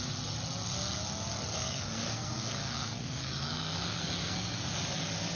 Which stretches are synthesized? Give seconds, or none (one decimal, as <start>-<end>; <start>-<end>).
1.5-4.7